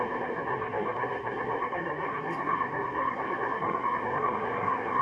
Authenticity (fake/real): fake